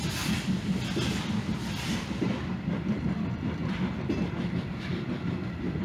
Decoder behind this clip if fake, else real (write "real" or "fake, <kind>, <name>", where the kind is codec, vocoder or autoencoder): real